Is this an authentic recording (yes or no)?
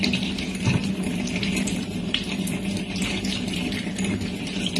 yes